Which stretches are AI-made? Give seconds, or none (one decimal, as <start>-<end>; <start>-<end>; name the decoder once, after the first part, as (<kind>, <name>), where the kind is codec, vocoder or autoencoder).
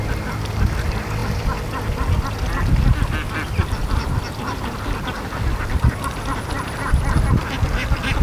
none